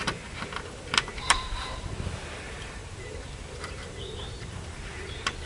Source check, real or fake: fake